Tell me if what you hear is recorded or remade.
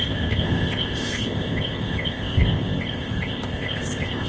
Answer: remade